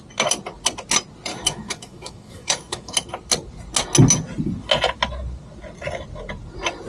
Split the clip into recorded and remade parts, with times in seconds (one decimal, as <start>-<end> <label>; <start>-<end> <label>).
0.0-1.3 recorded; 1.3-3.1 remade; 3.1-6.9 recorded